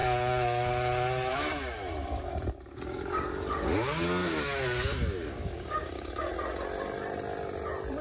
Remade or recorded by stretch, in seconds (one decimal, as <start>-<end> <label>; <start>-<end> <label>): 0.0-0.7 remade; 0.7-1.3 recorded; 1.3-6.1 remade; 6.1-8.0 recorded